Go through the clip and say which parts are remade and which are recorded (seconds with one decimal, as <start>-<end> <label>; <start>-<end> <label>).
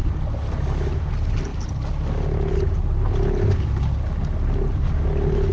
0.0-5.5 recorded